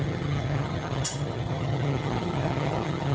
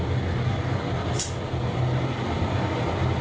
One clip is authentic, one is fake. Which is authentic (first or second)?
second